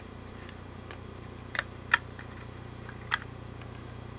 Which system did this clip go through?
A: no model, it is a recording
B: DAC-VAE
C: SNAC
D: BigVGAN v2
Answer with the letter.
A